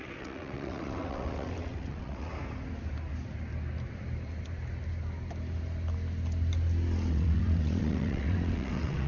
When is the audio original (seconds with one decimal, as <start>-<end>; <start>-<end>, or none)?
2.3-7.1